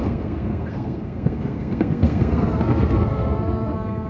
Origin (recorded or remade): remade